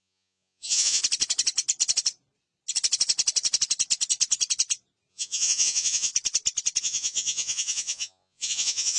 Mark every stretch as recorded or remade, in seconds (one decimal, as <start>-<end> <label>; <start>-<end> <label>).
0.0-1.0 remade; 1.0-5.1 recorded; 5.1-6.1 remade; 6.1-6.8 recorded; 6.8-9.0 remade

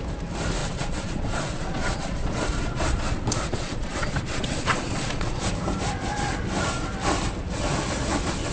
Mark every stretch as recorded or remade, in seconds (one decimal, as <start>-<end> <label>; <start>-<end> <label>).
0.0-0.6 recorded; 0.6-5.5 remade; 5.5-8.5 recorded

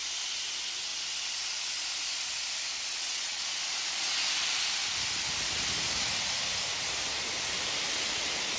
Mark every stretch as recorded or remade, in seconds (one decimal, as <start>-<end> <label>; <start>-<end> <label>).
0.0-2.9 recorded; 2.9-3.4 remade; 3.4-8.6 recorded